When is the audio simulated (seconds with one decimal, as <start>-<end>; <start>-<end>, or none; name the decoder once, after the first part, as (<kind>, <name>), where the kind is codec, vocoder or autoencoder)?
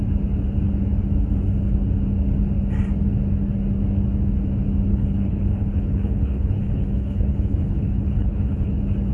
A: 4.9-8.7 (codec, HILCodec)